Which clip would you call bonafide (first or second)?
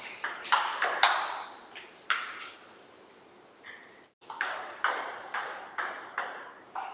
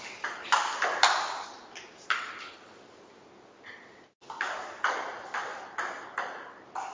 second